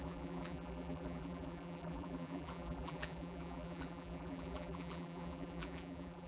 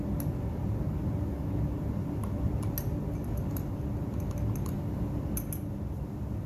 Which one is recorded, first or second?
second